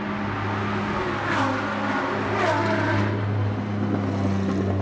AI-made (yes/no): no